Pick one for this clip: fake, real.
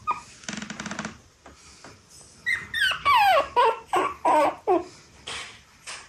real